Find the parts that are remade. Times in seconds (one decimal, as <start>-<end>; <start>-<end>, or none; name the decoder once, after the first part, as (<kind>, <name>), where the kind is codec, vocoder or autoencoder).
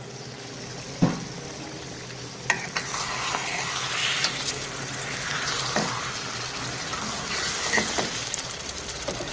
4.0-6.1 (vocoder, BigVGAN v2); 6.9-9.3